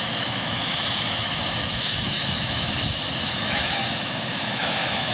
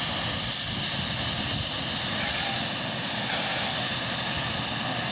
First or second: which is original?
second